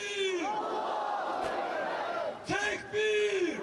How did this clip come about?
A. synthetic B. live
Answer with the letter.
B